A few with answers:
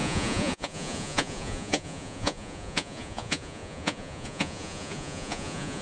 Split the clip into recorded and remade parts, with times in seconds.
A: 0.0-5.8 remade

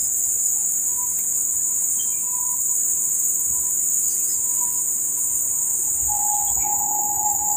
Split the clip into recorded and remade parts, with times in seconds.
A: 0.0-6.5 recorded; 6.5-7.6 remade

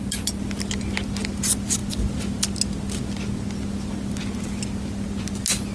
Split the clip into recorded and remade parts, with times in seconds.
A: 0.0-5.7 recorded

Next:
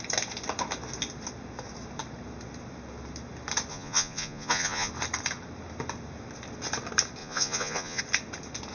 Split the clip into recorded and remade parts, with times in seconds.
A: 0.0-3.7 recorded; 3.7-4.9 remade; 4.9-7.2 recorded; 7.2-8.0 remade; 8.0-8.7 recorded

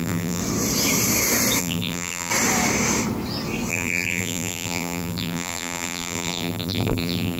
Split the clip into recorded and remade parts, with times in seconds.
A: 0.0-0.4 remade; 0.4-1.6 recorded; 1.6-2.3 remade; 2.3-3.7 recorded; 3.7-7.4 remade

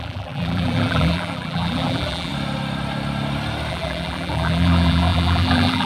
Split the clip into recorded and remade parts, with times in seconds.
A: 0.0-2.3 remade; 2.3-3.7 recorded; 3.7-5.9 remade